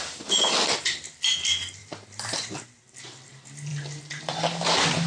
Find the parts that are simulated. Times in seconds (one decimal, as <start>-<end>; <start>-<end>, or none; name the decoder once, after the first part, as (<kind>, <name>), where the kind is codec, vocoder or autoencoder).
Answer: 1.8-3.0 (vocoder, BigVGAN v2)